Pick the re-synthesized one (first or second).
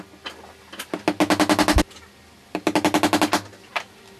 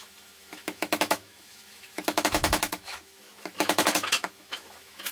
second